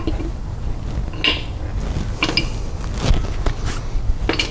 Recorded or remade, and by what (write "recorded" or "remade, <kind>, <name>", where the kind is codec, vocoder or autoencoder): recorded